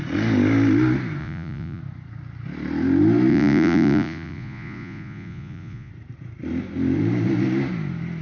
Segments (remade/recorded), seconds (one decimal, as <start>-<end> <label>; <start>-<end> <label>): 0.0-1.2 recorded; 1.2-1.8 remade; 1.8-3.3 recorded; 3.3-5.9 remade; 5.9-8.2 recorded